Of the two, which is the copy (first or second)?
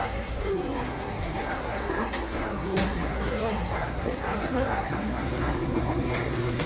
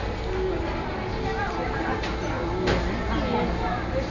first